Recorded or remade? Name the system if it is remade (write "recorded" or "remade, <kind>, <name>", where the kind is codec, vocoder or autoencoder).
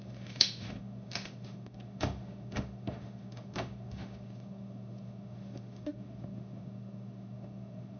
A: remade, autoencoder, DAC-VAE